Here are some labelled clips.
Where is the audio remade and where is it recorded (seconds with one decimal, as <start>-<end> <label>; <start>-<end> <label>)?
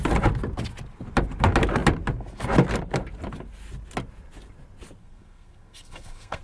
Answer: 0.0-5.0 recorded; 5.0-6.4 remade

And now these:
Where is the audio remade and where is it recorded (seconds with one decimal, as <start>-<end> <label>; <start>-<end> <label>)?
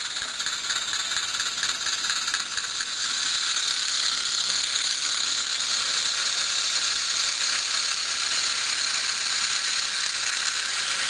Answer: 0.0-3.5 recorded; 3.5-5.7 remade; 5.7-9.9 recorded; 9.9-10.7 remade; 10.7-11.1 recorded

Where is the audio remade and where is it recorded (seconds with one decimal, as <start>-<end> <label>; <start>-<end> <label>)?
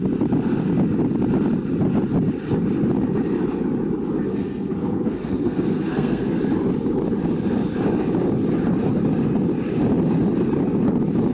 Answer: 0.0-4.3 recorded; 4.3-6.4 remade; 6.4-11.3 recorded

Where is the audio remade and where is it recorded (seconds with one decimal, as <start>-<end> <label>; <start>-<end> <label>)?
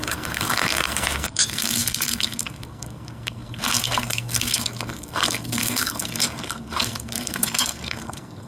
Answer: 0.0-8.5 remade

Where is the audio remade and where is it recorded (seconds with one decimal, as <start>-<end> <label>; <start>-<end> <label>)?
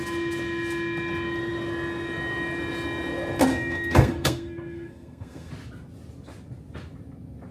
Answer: 0.0-3.5 recorded; 3.5-5.5 remade; 5.5-7.5 recorded